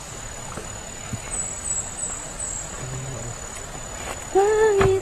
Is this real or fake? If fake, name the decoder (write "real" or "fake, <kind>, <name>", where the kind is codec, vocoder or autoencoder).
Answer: real